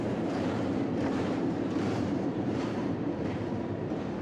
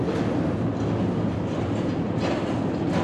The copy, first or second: first